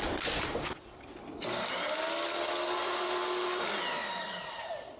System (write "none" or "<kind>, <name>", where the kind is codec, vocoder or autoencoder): none